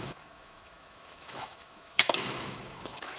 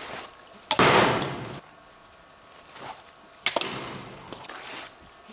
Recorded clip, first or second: second